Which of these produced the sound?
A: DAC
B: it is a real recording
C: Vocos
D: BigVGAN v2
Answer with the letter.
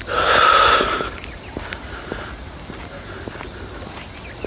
B